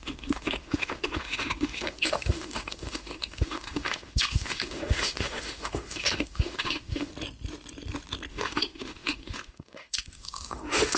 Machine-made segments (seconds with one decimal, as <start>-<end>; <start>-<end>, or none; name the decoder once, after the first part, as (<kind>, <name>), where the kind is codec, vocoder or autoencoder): 0.0-7.1 (autoencoder, DAC-VAE); 8.3-11.0